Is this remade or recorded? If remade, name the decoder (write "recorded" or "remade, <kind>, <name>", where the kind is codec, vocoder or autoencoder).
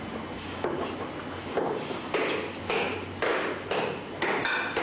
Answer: recorded